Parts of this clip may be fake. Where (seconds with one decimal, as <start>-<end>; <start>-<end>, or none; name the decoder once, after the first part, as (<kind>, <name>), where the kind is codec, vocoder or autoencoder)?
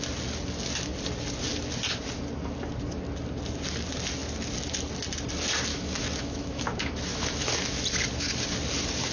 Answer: 5.7-7.6 (autoencoder, DAC-VAE)